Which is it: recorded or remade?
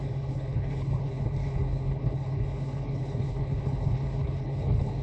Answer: remade